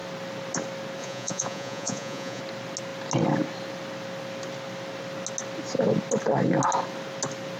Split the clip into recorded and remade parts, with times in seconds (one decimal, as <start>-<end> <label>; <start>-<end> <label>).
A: 0.0-1.0 recorded; 1.0-2.4 remade; 2.4-7.6 recorded